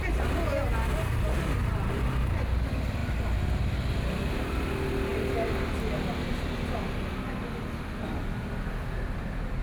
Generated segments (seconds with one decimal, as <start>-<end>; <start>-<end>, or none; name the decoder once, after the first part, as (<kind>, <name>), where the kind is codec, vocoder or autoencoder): none